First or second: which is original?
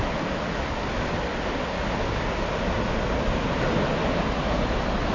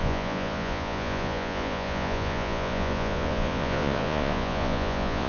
first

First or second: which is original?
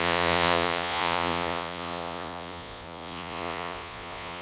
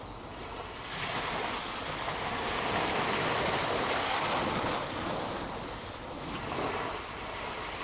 second